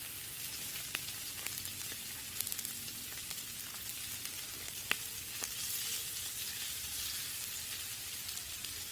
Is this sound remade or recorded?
recorded